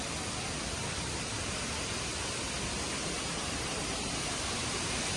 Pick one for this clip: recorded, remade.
recorded